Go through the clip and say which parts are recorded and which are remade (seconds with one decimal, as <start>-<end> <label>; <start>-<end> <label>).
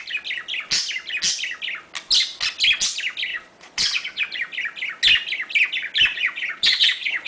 0.0-3.3 recorded; 3.3-4.2 remade; 4.2-6.1 recorded; 6.1-7.3 remade